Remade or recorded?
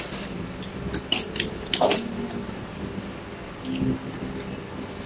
recorded